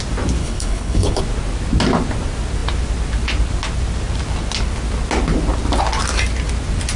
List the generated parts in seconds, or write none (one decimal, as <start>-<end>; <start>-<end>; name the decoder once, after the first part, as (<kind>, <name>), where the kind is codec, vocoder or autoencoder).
0.4-1.2 (codec, HILCodec)